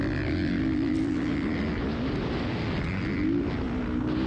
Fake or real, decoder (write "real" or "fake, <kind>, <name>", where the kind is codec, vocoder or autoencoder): real